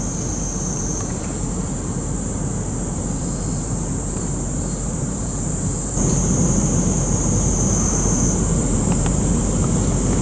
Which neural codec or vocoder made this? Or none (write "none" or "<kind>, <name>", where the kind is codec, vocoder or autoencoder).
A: vocoder, BigVGAN v2